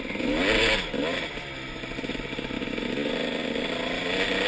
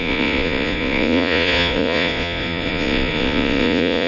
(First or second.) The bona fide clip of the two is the first